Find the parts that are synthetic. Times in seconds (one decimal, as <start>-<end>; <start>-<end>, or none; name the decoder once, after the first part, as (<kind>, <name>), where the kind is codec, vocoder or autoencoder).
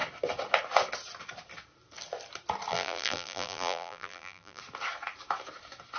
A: 2.7-4.6 (vocoder, BigVGAN v2)